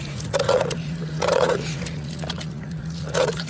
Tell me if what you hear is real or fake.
fake